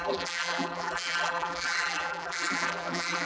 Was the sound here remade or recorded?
remade